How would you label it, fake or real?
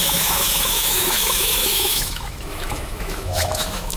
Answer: fake